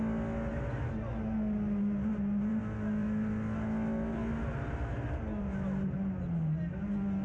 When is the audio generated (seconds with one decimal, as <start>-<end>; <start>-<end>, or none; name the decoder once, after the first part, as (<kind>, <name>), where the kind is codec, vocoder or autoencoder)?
none